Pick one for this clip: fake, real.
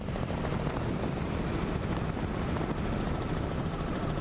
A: real